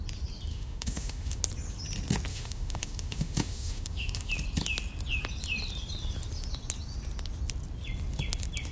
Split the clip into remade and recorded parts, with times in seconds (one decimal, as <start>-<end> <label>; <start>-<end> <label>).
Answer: 0.0-0.5 recorded; 0.5-1.4 remade; 1.4-2.3 recorded; 2.3-4.3 remade; 4.3-8.7 recorded

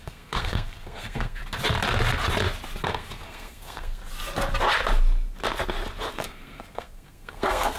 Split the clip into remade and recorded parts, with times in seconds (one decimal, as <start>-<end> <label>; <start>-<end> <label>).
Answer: 0.0-1.4 remade; 1.4-2.8 recorded; 2.8-4.0 remade; 4.0-6.1 recorded; 6.1-7.8 remade

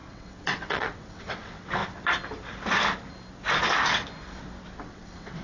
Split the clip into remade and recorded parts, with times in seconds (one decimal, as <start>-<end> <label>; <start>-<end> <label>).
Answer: 0.0-1.8 remade; 1.8-4.8 recorded; 4.8-5.4 remade

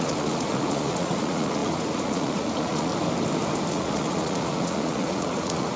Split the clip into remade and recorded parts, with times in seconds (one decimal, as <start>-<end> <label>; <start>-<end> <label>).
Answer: 0.0-2.9 remade; 2.9-3.7 recorded; 3.7-5.8 remade

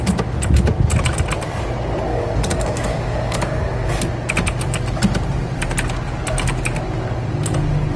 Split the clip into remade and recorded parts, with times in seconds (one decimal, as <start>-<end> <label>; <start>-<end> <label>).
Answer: 0.0-2.1 recorded; 2.1-4.0 remade; 4.0-8.0 recorded

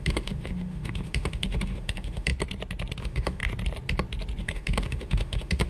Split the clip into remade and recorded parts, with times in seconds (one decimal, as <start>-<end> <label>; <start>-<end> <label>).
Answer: 0.0-2.3 remade; 2.3-3.0 recorded; 3.0-3.4 remade; 3.4-4.4 recorded; 4.4-5.7 remade

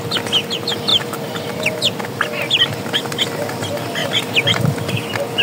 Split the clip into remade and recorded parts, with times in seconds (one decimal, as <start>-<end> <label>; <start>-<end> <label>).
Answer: 0.0-0.9 recorded; 0.9-1.8 remade; 1.8-4.0 recorded; 4.0-4.6 remade; 4.6-5.4 recorded